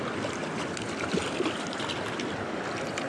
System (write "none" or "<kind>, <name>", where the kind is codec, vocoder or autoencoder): none